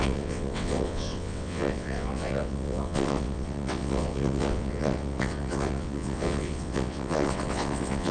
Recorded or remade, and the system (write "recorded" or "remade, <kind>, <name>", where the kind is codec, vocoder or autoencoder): remade, vocoder, WaveNeXt